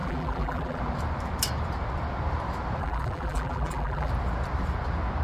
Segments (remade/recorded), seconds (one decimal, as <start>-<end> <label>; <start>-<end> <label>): 0.0-0.8 remade; 0.8-2.8 recorded; 2.8-4.1 remade; 4.1-5.2 recorded